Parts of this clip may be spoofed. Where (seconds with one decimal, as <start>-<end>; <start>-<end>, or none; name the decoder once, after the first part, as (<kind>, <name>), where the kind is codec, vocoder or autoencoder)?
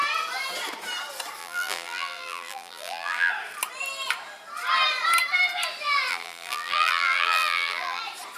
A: 1.4-3.3 (vocoder, BigVGAN v2); 6.1-8.0